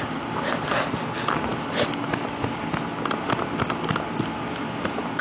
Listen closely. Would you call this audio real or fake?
real